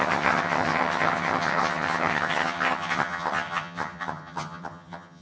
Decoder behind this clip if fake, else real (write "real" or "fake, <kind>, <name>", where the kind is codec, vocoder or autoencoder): fake, vocoder, HiFi-GAN